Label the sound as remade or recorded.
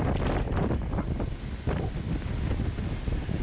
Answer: recorded